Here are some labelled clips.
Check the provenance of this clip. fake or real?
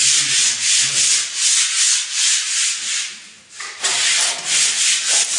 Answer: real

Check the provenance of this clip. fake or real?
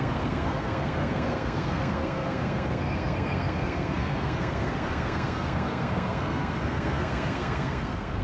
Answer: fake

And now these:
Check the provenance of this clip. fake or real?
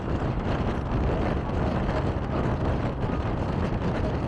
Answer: real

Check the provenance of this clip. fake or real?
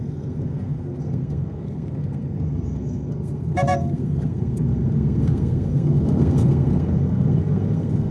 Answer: fake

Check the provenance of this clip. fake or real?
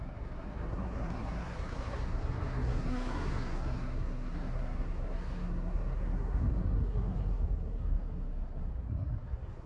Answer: fake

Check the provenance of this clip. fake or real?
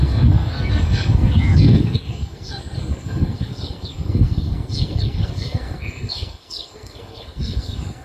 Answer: fake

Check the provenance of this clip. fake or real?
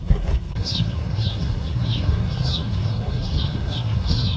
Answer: fake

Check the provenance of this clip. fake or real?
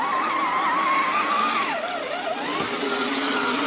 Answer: real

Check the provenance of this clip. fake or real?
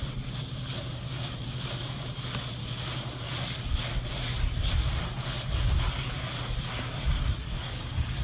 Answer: real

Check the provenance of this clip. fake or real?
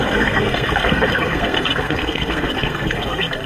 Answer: fake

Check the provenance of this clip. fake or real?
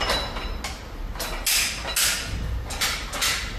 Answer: real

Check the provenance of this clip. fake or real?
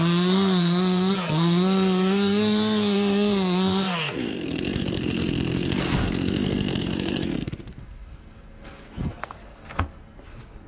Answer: fake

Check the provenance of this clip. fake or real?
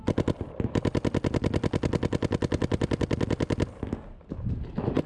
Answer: real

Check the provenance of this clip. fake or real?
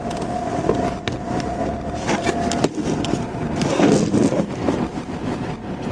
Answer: real